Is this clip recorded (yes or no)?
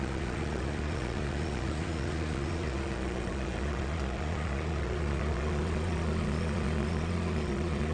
no